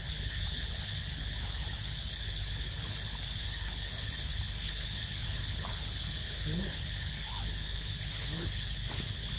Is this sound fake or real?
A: fake